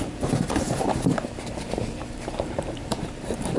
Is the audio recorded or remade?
remade